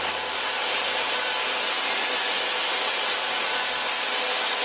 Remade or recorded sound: recorded